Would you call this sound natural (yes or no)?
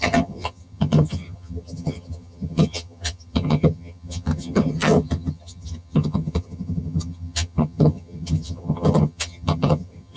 no